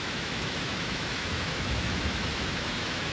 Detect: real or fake fake